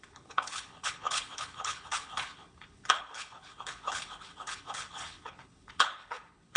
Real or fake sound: fake